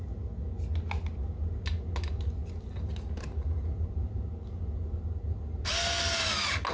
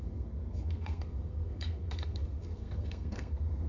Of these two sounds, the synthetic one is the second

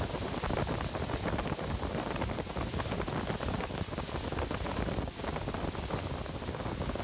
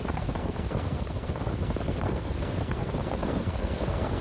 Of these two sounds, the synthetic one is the second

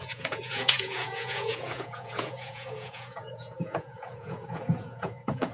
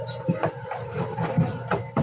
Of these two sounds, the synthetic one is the first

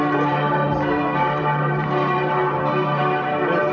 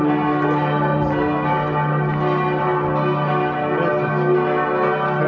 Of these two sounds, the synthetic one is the first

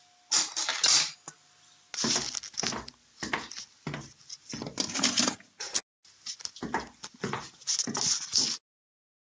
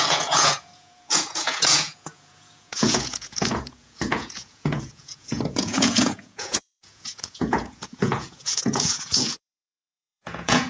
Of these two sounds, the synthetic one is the second